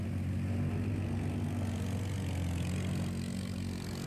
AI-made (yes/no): no